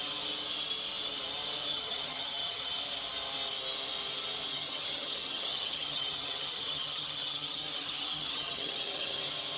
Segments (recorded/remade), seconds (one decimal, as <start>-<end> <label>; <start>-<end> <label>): 0.0-1.7 recorded; 1.7-2.8 remade; 2.8-4.5 recorded; 4.5-9.2 remade; 9.2-9.6 recorded